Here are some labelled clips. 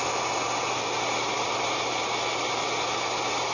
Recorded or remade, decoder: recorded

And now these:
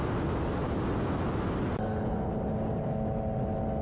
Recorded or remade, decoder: recorded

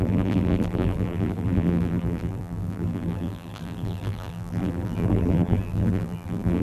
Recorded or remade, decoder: remade, vocoder, BigVGAN v2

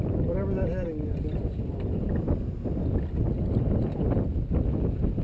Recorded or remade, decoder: recorded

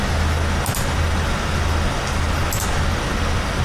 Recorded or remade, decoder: recorded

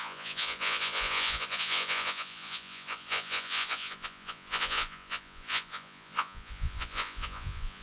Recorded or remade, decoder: remade, vocoder, Vocos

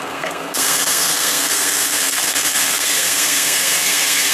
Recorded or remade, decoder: remade, codec, SNAC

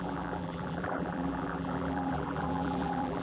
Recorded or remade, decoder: remade, vocoder, BigVGAN v2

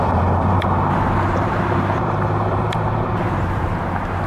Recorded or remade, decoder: remade, vocoder, BigVGAN v2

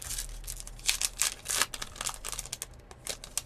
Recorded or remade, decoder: recorded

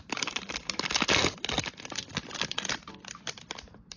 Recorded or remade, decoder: recorded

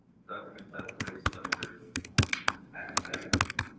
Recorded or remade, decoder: remade, codec, SNAC